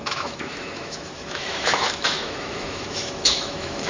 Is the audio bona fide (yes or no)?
no